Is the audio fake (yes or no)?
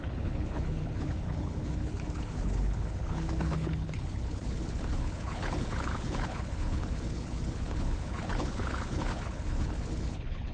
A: yes